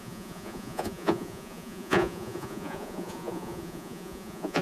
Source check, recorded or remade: remade